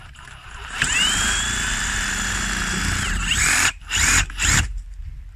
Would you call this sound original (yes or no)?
no